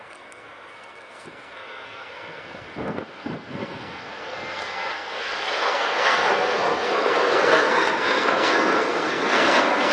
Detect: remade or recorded remade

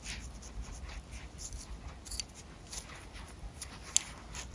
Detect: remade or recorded recorded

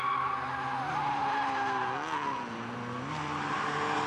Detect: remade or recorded recorded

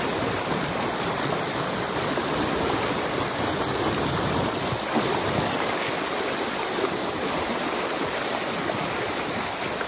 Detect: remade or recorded recorded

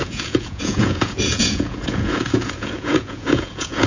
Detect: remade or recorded remade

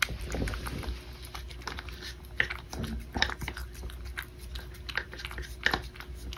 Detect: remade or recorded recorded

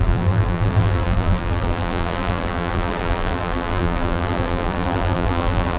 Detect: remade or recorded remade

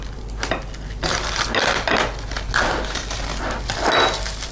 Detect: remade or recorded recorded